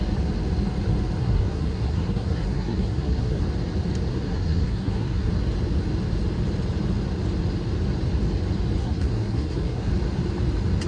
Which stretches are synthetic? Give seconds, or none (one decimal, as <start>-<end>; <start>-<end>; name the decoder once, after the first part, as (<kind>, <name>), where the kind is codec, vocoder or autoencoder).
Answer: 1.2-3.4 (codec, SNAC); 4.1-5.3; 8.8-9.9